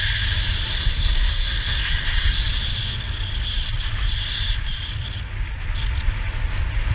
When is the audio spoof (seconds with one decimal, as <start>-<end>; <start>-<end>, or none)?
0.7-2.3